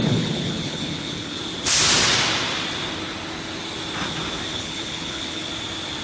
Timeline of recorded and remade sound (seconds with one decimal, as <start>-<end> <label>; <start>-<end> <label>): 0.0-1.4 remade; 1.4-4.5 recorded; 4.5-5.5 remade; 5.5-6.0 recorded